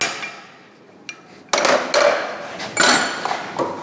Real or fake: real